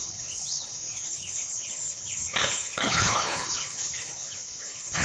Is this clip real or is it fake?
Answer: fake